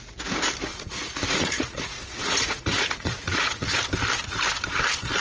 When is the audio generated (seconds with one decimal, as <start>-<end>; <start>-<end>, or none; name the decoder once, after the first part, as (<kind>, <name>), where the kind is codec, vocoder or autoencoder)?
0.7-3.8 (vocoder, Vocos)